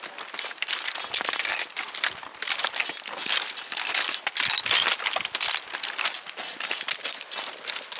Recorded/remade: recorded